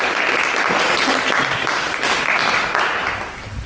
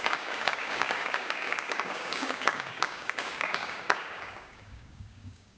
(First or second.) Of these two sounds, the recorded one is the first